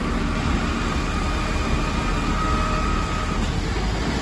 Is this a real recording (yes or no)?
yes